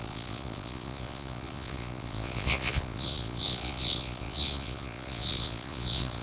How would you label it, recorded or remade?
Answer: remade